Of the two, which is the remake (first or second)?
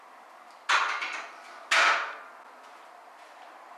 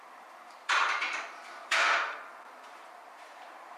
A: second